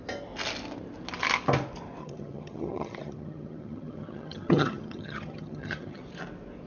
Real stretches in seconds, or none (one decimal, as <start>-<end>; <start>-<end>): 0.0-2.0; 6.0-6.7